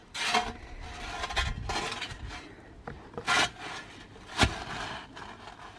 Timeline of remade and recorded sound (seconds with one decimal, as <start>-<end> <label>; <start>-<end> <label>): 0.0-5.8 recorded